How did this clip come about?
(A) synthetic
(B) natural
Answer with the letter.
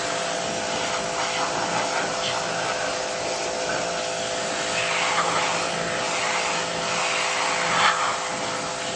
B